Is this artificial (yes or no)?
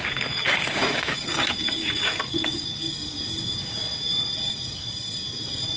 yes